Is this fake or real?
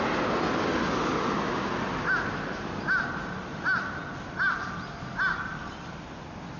real